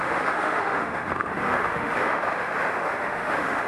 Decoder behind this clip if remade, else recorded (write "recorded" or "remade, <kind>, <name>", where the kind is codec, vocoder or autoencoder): remade, autoencoder, DAC-VAE